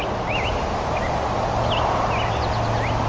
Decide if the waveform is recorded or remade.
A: recorded